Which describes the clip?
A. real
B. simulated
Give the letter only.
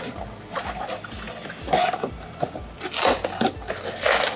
A